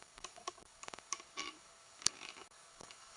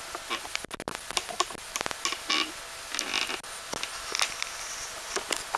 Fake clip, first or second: first